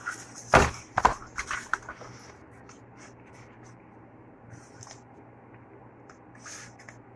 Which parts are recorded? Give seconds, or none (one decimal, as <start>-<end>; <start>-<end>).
0.0-1.2; 4.8-5.8; 6.8-7.2

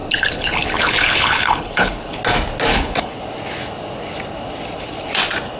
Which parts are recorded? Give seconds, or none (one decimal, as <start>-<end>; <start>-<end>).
2.2-2.7; 3.2-5.6